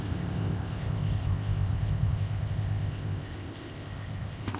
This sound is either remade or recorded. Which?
remade